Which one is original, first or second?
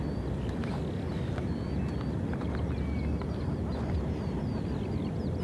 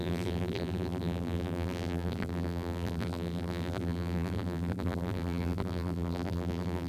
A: first